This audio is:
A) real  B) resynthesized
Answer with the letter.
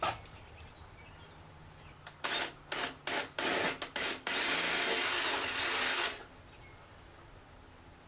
A